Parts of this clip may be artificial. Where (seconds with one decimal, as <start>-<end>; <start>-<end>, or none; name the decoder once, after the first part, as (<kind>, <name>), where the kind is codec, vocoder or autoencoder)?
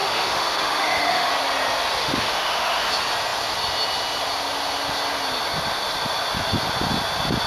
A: 0.0-1.3 (autoencoder, DAC-VAE); 2.0-2.9